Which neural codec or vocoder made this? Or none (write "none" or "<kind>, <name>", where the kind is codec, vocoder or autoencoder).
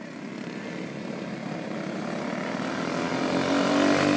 none